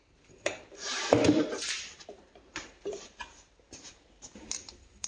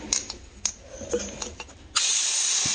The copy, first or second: first